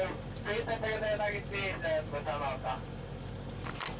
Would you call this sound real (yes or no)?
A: yes